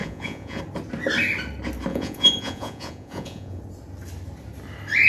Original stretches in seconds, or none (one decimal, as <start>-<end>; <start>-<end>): 0.6-1.9; 3.6-5.1